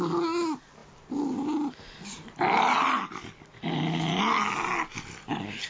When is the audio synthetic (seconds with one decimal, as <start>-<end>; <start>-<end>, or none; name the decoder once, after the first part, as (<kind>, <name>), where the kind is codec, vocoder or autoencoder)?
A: none